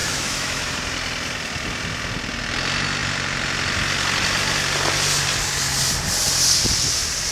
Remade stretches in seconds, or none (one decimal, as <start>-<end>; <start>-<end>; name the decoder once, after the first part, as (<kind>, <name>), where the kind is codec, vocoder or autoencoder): 0.0-0.7 (autoencoder, DAC-VAE)